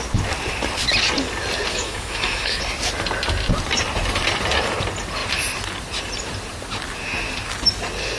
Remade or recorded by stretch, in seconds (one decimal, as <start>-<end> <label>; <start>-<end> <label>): 0.0-1.7 recorded; 1.7-2.6 remade; 2.6-8.2 recorded